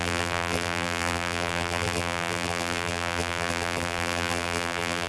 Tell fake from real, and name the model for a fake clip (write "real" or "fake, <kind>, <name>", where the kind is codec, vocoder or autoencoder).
fake, vocoder, BigVGAN v2